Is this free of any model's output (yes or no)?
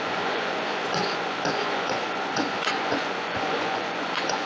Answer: no